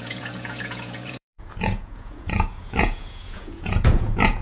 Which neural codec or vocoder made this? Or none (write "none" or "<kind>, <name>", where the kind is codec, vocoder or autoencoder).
vocoder, Vocos